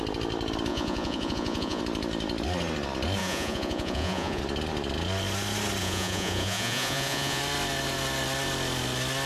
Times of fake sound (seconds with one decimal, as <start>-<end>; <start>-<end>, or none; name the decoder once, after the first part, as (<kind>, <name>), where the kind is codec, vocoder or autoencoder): 0.7-1.8 (vocoder, Vocos); 3.2-4.4; 5.8-7.4